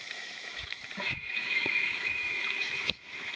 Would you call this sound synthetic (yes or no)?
yes